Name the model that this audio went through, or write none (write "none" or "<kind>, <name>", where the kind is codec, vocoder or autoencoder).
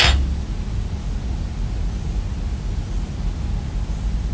none